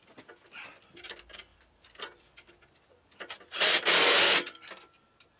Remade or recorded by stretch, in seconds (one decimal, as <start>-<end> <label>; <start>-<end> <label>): 0.0-1.5 recorded; 1.5-4.7 remade; 4.7-5.4 recorded